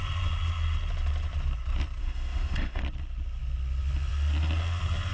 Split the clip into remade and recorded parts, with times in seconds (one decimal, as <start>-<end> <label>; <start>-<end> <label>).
0.0-2.0 recorded; 2.0-2.8 remade; 2.8-5.1 recorded